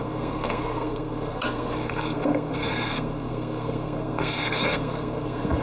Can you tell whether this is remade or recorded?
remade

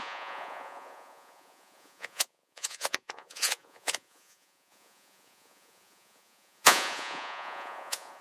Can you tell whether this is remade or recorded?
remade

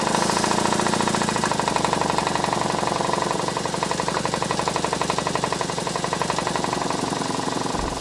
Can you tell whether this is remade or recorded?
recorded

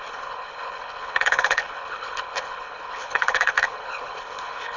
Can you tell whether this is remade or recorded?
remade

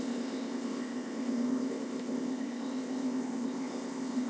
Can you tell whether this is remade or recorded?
remade